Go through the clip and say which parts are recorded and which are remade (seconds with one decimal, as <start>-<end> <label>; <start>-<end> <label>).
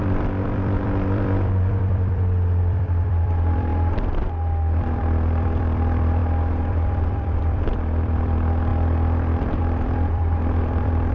0.0-3.7 remade; 3.7-4.8 recorded; 4.8-6.2 remade; 6.2-6.7 recorded; 6.7-11.1 remade